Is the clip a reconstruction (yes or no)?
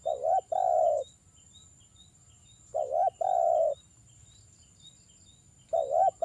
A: no